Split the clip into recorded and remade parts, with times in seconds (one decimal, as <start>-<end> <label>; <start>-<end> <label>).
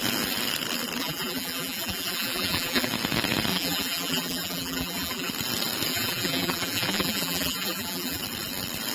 0.0-1.0 recorded; 1.0-2.9 remade; 2.9-3.5 recorded; 3.5-5.3 remade; 5.3-5.9 recorded; 5.9-8.2 remade; 8.2-8.9 recorded